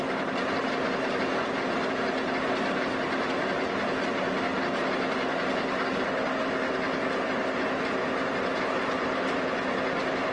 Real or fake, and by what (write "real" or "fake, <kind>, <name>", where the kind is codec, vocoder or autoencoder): real